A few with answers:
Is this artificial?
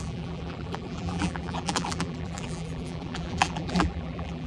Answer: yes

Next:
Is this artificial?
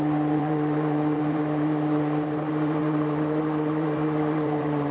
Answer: yes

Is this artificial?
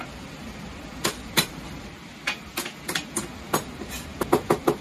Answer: no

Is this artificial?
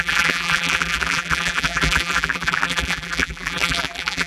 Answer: yes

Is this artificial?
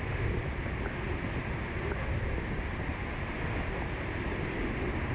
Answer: no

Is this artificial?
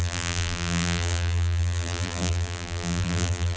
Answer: yes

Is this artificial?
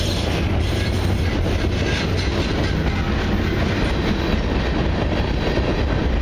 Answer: no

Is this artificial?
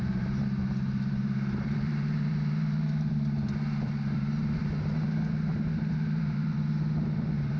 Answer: yes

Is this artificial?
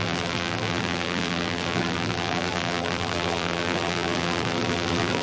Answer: yes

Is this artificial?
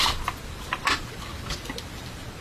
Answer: yes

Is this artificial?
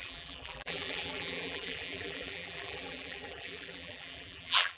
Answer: yes